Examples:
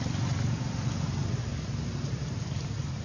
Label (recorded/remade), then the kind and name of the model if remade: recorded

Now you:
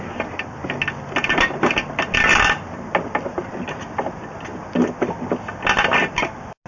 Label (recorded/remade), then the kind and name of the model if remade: recorded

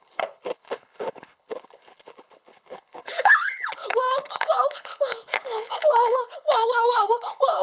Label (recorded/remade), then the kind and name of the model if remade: remade, codec, HILCodec